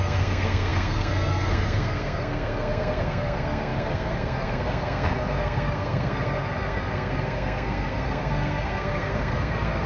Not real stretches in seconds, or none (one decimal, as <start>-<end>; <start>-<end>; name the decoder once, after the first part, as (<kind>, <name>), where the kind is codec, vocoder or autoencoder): 0.0-9.9 (codec, SNAC)

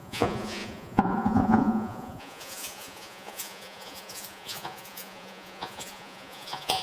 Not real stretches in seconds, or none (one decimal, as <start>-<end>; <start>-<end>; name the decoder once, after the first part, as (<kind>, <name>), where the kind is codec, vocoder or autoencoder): 0.0-6.8 (vocoder, Vocos)

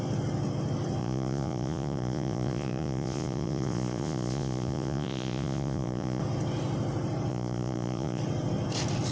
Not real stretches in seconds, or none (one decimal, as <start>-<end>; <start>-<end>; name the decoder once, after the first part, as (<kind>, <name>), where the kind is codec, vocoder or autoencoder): 1.0-6.2 (vocoder, Vocos); 7.3-8.2

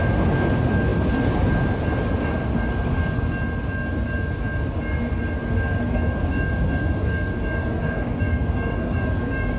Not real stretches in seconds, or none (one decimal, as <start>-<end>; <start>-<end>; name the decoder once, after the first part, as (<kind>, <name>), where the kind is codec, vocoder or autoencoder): 5.4-9.6 (codec, DAC)

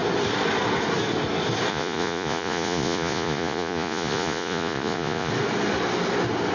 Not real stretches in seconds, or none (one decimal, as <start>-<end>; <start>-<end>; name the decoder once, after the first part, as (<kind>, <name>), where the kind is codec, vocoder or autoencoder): 1.7-5.3 (vocoder, Vocos)

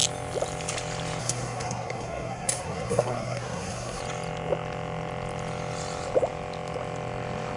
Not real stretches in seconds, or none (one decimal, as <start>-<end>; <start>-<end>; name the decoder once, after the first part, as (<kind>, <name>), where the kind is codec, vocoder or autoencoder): 1.2-4.0 (codec, SNAC)